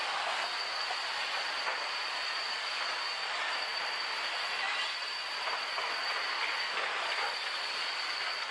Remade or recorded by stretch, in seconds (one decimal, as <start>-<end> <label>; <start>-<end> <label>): 0.0-8.5 recorded

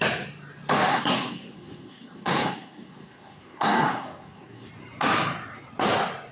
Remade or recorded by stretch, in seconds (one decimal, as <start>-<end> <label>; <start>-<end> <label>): 0.0-0.9 recorded; 0.9-4.7 remade; 4.7-6.3 recorded

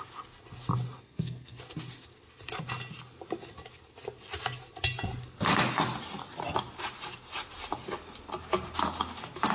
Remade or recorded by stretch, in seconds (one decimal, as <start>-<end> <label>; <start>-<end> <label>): 0.0-1.0 recorded; 1.0-1.6 remade; 1.6-9.5 recorded

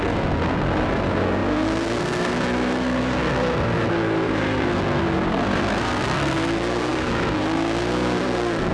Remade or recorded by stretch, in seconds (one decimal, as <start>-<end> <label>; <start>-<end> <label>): 0.0-8.7 remade